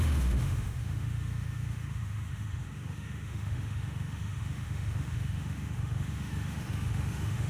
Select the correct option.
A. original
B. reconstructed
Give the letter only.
B